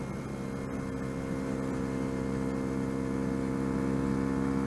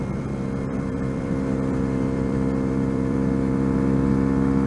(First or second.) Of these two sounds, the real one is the first